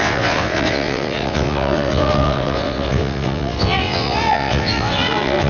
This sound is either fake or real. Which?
fake